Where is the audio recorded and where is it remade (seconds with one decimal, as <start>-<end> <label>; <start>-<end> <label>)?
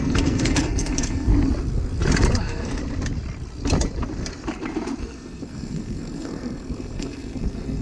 0.0-1.3 remade; 1.3-2.4 recorded; 2.4-2.8 remade; 2.8-5.0 recorded; 5.0-7.8 remade